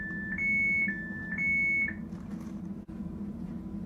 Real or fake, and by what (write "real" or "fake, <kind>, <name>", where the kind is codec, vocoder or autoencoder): real